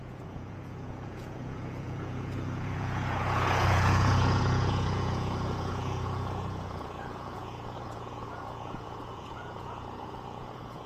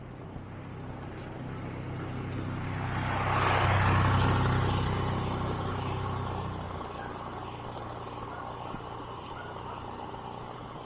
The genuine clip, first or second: second